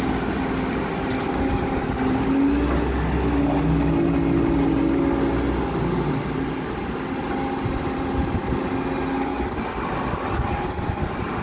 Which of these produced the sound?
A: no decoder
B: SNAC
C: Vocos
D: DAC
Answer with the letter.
A